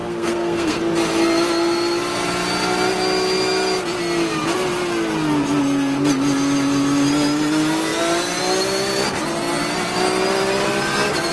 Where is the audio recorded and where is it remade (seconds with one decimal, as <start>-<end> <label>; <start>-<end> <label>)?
0.0-0.8 remade; 0.8-11.3 recorded